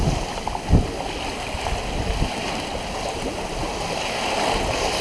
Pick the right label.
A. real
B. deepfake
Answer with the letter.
A